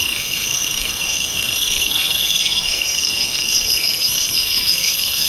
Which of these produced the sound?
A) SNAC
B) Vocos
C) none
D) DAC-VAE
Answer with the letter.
A